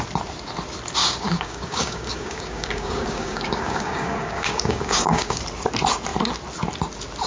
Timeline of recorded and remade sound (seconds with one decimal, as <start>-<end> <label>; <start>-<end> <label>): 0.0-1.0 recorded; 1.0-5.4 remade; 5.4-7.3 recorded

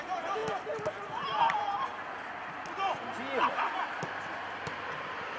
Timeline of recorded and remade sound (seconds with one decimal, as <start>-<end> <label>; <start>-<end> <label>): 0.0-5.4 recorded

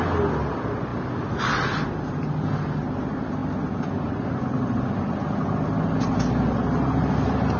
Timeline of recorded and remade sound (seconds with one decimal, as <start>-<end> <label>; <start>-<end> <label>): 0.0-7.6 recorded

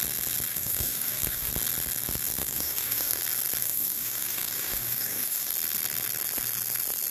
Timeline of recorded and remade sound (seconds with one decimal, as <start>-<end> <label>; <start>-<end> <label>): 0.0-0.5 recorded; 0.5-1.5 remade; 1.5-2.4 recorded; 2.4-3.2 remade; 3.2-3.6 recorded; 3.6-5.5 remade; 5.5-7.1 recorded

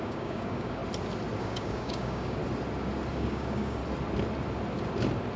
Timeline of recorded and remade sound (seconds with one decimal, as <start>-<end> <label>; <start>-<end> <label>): 0.0-0.8 remade; 0.8-1.4 recorded; 1.4-2.4 remade; 2.4-3.1 recorded; 3.1-3.8 remade; 3.8-5.4 recorded